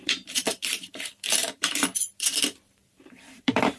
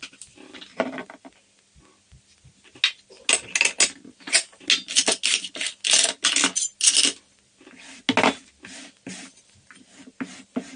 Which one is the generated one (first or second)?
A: first